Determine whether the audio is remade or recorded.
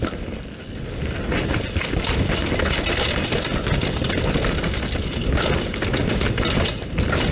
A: recorded